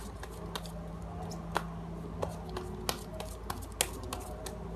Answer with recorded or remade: recorded